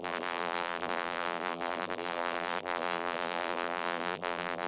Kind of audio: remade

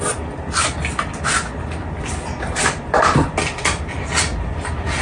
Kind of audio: recorded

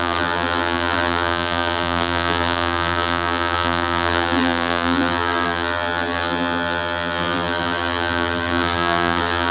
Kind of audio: remade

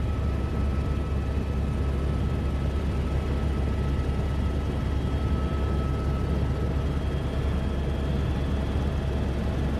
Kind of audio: recorded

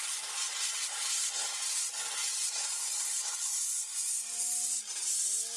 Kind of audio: recorded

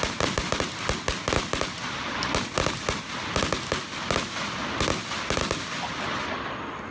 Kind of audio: recorded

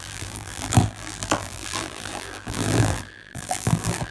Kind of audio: remade